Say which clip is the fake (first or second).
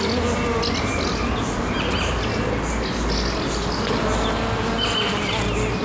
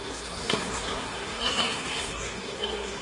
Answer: second